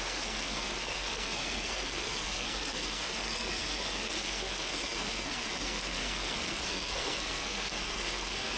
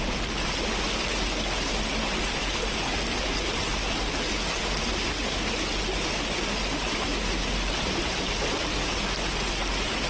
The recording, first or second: second